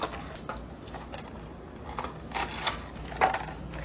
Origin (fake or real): real